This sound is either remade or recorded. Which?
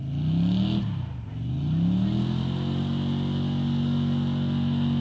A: recorded